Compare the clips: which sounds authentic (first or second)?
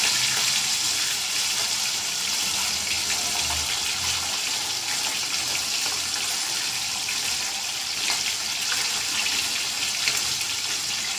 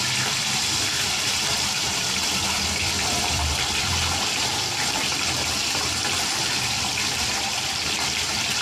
first